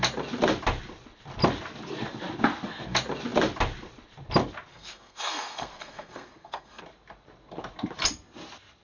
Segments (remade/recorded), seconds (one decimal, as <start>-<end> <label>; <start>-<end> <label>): 0.0-4.7 recorded; 4.7-6.8 remade; 6.8-8.8 recorded